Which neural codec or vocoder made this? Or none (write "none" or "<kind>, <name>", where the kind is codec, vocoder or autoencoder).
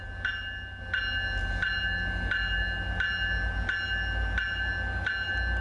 none